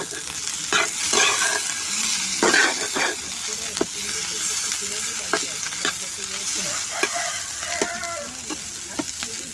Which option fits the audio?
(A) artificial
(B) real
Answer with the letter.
B